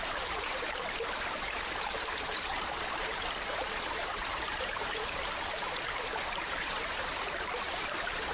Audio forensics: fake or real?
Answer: fake